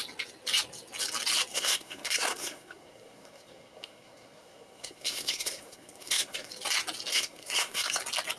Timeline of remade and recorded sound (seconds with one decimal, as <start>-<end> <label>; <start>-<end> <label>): 0.0-1.5 recorded; 1.5-6.5 remade; 6.5-7.1 recorded; 7.1-8.0 remade; 8.0-8.4 recorded

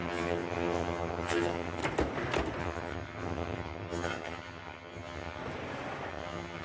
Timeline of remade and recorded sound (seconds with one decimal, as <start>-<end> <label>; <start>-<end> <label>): 0.0-1.8 remade; 1.8-2.6 recorded; 2.6-5.4 remade; 5.4-6.1 recorded; 6.1-6.6 remade

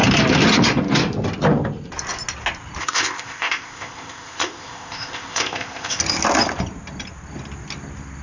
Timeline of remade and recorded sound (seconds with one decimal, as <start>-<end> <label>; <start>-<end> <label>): 0.0-2.8 recorded; 2.8-6.0 remade; 6.0-8.2 recorded

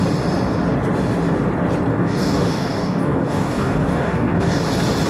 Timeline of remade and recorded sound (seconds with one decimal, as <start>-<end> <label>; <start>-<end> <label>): 0.0-1.9 recorded; 1.9-4.6 remade; 4.6-5.1 recorded